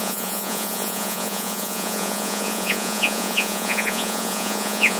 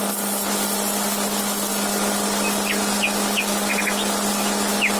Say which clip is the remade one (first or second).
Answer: first